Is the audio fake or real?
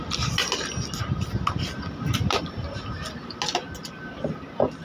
real